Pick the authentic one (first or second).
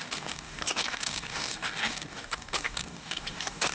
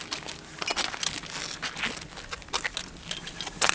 second